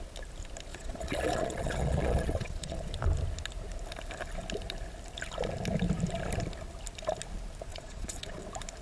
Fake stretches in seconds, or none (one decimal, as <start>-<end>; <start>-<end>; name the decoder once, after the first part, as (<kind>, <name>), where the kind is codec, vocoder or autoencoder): 0.7-2.9 (vocoder, Vocos); 7.7-8.4